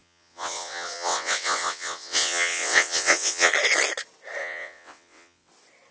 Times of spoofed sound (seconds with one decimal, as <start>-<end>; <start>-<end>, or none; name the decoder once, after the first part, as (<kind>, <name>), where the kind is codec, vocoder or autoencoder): 0.0-3.5 (vocoder, WaveNeXt); 4.4-5.5